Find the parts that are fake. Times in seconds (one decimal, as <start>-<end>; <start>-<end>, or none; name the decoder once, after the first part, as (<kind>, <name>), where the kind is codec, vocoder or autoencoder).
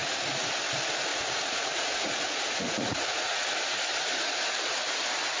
0.0-0.5 (vocoder, Vocos); 1.1-3.5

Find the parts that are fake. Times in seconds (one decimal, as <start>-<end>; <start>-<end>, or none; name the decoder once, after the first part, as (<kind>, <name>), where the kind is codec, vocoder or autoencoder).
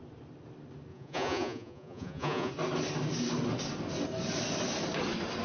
0.9-2.5 (vocoder, Vocos)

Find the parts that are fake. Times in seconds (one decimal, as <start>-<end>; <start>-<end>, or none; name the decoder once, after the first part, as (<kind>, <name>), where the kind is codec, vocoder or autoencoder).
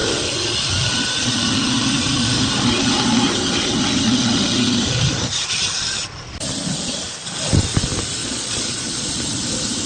8.2-9.1 (vocoder, Vocos)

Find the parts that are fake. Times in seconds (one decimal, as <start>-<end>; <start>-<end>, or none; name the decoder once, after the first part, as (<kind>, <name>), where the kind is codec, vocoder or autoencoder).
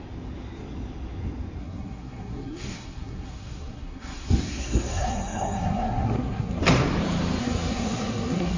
1.6-6.6 (codec, SNAC); 7.4-8.6